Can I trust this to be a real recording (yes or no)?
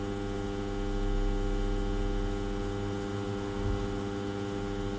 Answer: yes